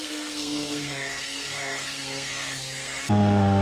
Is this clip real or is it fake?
fake